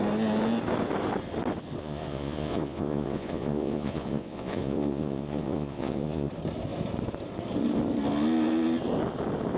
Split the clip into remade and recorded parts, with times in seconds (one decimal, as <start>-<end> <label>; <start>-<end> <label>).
0.0-1.8 recorded; 1.8-6.3 remade; 6.3-9.6 recorded